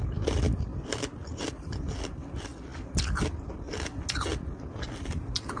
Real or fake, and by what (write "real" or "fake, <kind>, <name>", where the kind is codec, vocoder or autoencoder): real